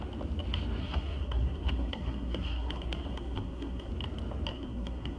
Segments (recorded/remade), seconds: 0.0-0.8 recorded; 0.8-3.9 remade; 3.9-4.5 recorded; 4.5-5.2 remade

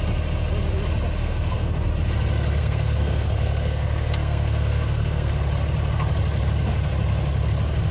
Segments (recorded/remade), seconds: 0.0-1.2 recorded; 1.2-1.9 remade; 1.9-2.6 recorded; 2.6-5.3 remade; 5.3-7.9 recorded

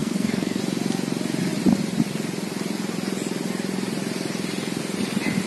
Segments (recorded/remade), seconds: 0.0-0.6 remade; 0.6-5.5 recorded

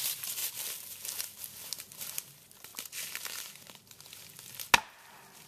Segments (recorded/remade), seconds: 0.0-5.5 recorded

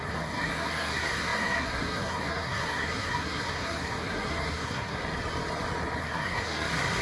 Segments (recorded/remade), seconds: 0.0-5.0 remade; 5.0-6.0 recorded; 6.0-7.0 remade

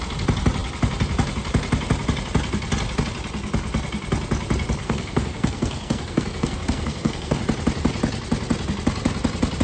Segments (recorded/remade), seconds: 0.0-4.8 recorded; 4.8-7.4 remade; 7.4-9.6 recorded